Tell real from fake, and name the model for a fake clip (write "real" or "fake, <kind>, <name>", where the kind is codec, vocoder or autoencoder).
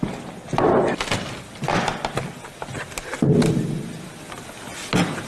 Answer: real